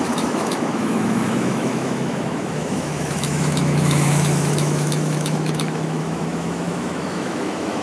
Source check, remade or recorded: remade